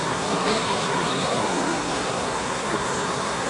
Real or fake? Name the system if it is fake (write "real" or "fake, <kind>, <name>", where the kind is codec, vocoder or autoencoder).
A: fake, codec, SNAC